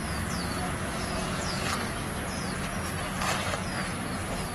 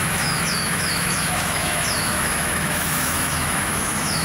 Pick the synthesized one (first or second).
second